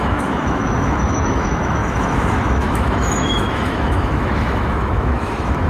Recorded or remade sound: remade